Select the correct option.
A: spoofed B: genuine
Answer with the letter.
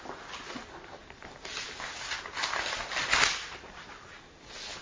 B